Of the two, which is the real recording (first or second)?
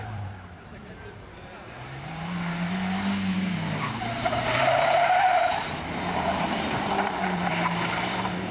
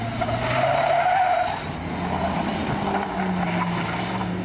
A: second